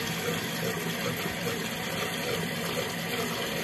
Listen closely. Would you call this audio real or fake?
real